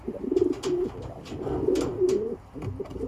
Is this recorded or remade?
recorded